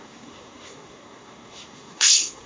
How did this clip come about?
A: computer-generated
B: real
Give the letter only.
A